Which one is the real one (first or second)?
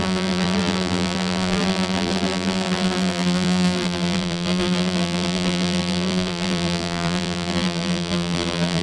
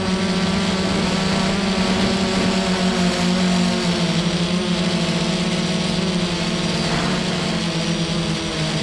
second